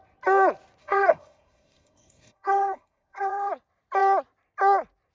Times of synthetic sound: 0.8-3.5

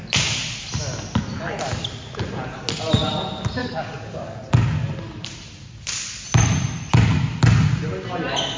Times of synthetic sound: 3.6-4.4